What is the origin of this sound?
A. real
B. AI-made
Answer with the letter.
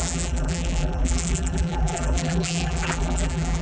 B